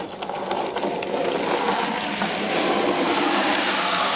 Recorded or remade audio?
remade